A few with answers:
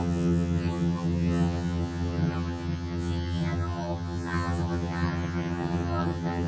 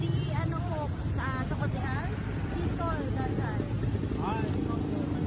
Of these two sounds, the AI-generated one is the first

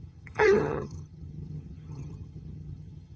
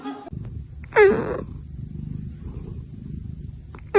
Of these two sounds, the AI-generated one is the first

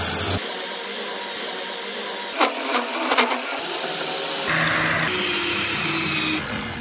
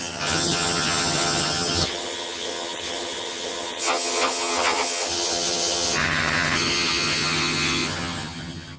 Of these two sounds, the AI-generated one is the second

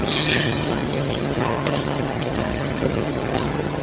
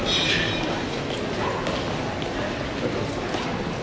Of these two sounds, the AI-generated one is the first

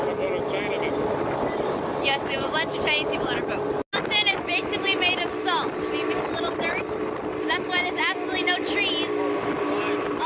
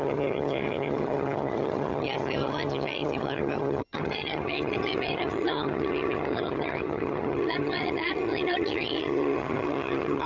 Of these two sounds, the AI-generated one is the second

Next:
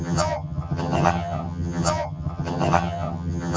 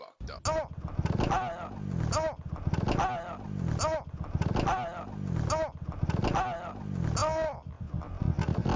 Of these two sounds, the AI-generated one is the first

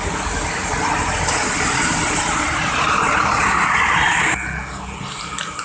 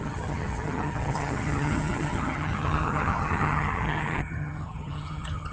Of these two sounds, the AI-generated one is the second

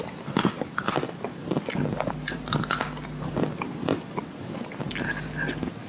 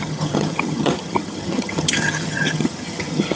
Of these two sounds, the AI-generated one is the second